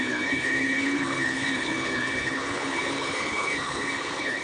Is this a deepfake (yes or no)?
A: yes